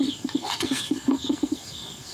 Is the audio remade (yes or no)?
yes